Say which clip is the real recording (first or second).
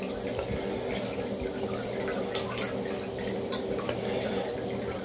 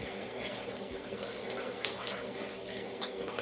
first